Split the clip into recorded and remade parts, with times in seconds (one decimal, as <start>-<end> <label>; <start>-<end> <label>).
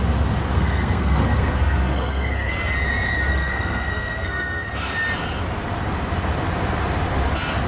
0.0-0.5 recorded; 0.5-2.5 remade; 2.5-3.3 recorded; 3.3-4.7 remade; 4.7-7.7 recorded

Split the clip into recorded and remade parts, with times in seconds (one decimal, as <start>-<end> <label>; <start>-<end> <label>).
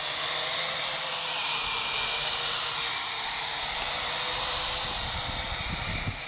0.0-6.3 recorded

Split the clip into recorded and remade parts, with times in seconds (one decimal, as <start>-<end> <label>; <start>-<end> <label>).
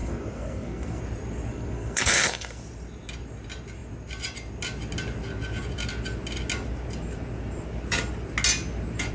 0.0-1.0 remade; 1.0-1.5 recorded; 1.5-2.6 remade; 2.6-9.1 recorded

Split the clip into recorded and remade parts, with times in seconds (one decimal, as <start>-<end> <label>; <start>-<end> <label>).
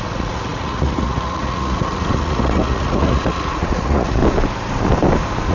0.0-4.2 remade; 4.2-5.5 recorded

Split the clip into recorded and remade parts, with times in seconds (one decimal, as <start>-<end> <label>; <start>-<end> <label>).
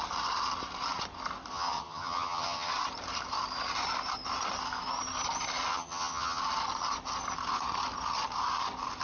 0.0-1.5 recorded; 1.5-2.7 remade; 2.7-5.7 recorded; 5.7-6.4 remade; 6.4-9.0 recorded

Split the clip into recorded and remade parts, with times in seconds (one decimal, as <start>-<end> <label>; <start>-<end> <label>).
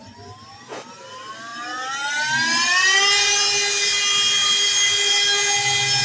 0.0-6.0 recorded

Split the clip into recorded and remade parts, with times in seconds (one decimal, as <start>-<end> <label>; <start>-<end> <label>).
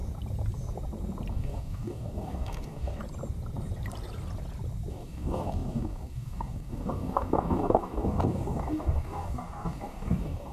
0.0-1.3 recorded; 1.3-3.0 remade; 3.0-4.9 recorded; 4.9-10.5 remade